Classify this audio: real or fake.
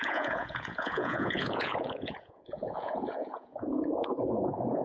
fake